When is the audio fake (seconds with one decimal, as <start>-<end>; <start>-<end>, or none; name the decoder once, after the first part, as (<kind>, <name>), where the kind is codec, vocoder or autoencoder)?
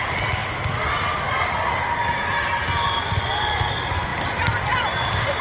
0.4-0.9 (vocoder, BigVGAN v2); 4.1-5.4